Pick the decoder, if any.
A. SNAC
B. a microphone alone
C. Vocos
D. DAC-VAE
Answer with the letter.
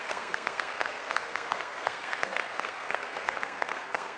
A